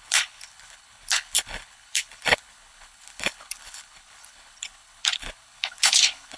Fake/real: fake